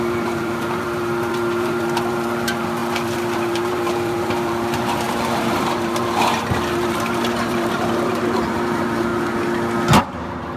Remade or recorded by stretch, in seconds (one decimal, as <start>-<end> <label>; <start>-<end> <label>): 0.0-9.1 remade; 9.1-10.0 recorded; 10.0-10.6 remade